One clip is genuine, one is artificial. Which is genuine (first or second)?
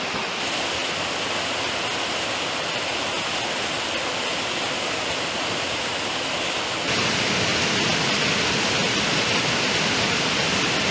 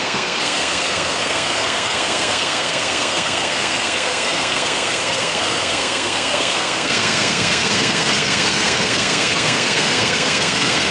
first